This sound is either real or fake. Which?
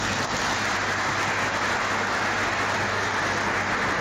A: real